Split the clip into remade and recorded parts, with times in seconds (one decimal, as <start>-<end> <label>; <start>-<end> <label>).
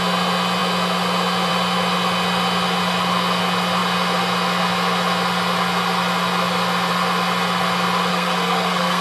0.0-8.1 recorded; 8.1-9.0 remade